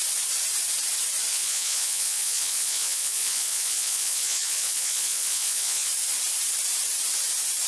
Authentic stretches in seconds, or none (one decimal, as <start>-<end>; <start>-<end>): 0.0-1.3; 5.9-7.7